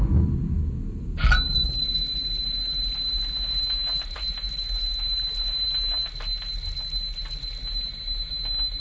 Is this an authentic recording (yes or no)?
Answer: yes